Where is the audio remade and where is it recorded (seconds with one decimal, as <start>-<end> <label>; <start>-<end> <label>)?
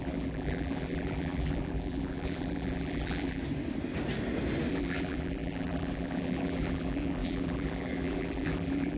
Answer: 0.0-3.4 remade; 3.4-4.7 recorded; 4.7-9.0 remade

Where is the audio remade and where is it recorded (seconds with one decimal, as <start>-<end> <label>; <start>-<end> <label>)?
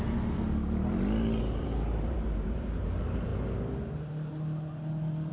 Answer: 0.0-0.4 remade; 0.4-1.4 recorded; 1.4-3.3 remade; 3.3-5.3 recorded